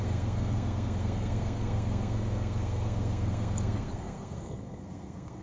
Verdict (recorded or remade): remade